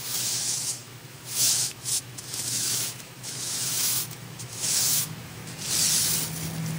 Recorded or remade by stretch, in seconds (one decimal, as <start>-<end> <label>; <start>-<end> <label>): 0.0-5.4 remade; 5.4-6.8 recorded